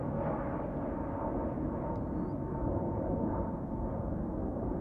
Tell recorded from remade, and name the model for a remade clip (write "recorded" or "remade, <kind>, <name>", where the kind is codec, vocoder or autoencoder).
recorded